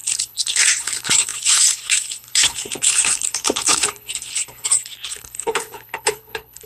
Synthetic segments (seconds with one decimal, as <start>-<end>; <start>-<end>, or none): 0.0-6.7

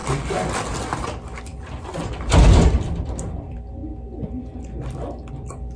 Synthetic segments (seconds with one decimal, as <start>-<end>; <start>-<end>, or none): 0.0-1.5; 2.1-3.8; 5.3-5.8

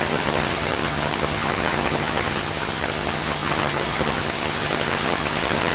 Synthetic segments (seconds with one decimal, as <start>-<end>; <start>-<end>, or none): 0.0-5.7

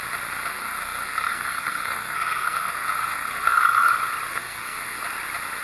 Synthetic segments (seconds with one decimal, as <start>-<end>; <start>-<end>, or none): 0.5-3.9; 4.3-5.0

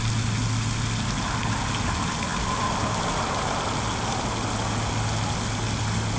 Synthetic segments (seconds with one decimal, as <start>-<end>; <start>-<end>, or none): none

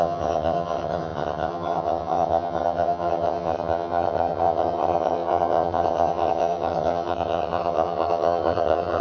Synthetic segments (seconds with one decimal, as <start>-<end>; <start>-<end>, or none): 0.0-9.0

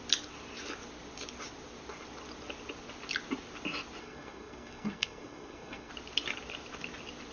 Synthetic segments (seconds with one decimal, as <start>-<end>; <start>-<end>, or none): 4.0-5.9